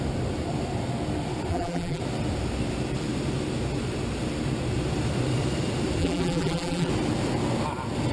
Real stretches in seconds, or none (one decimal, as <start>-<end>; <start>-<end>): 0.0-1.5; 2.0-6.0; 6.9-8.1